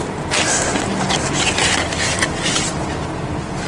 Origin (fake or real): real